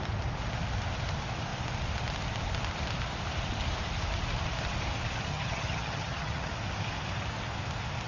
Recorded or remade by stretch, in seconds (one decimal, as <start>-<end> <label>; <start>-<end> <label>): 0.0-5.3 recorded; 5.3-6.5 remade; 6.5-8.1 recorded